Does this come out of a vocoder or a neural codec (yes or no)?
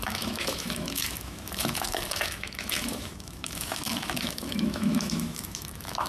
yes